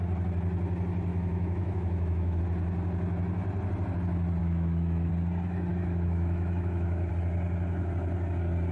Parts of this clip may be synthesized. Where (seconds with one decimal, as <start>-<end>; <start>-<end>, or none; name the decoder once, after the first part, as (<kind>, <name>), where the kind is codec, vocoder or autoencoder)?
1.1-2.4 (autoencoder, DAC-VAE); 4.4-5.1; 5.7-7.1